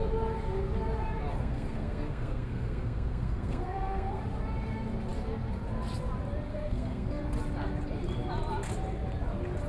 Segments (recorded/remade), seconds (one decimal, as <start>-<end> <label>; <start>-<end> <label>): 0.0-1.3 recorded; 1.3-4.2 remade; 4.2-6.5 recorded; 6.5-7.2 remade; 7.2-9.7 recorded